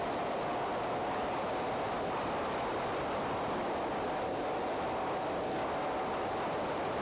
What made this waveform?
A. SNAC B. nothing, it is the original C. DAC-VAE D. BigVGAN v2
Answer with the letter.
B